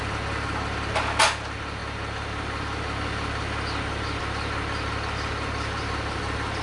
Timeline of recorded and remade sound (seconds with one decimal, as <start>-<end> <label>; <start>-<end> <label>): 0.0-6.6 recorded

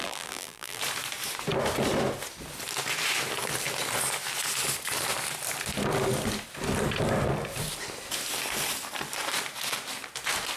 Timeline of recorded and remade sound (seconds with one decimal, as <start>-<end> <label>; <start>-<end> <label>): 0.0-0.8 remade; 0.8-10.6 recorded

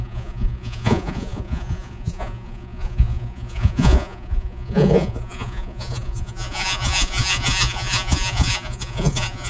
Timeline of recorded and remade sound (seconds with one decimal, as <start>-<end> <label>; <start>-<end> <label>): 0.0-9.5 remade

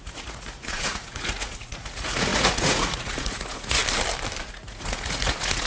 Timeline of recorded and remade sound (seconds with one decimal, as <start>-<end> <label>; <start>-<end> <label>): 0.0-3.8 remade; 3.8-4.5 recorded; 4.5-5.7 remade